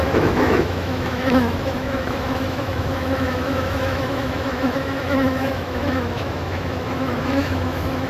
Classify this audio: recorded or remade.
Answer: remade